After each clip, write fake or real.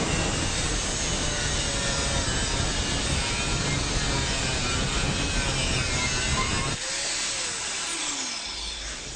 real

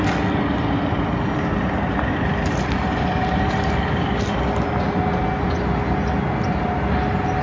real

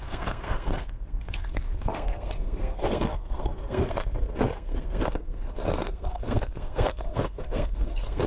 fake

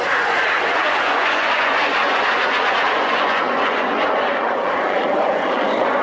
fake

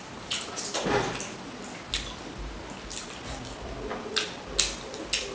real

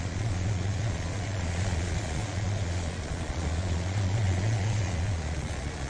fake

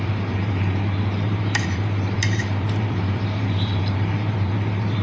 fake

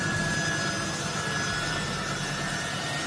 real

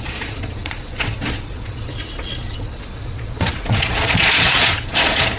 fake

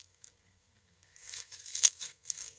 fake